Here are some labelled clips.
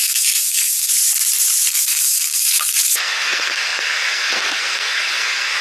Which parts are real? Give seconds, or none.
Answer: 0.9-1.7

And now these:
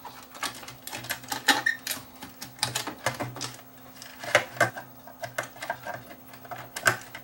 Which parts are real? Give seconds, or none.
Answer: 0.0-7.2

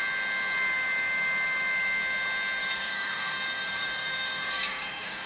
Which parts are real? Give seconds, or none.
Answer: 0.0-2.6

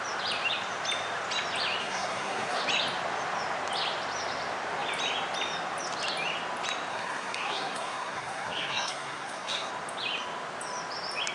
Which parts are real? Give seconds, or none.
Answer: 0.0-1.8; 2.6-6.9; 9.7-11.3

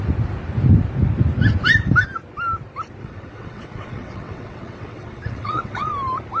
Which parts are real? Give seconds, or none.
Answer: 0.0-3.0; 5.9-6.4

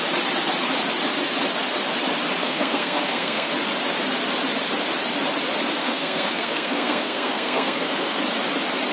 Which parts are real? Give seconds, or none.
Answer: 0.0-2.4; 3.5-5.8; 8.2-8.9

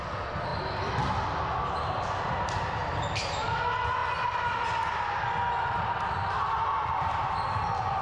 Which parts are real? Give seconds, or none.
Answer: 0.0-8.0

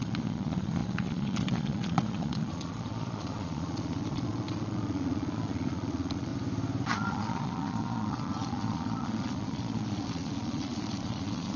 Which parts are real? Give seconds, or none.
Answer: 6.3-6.9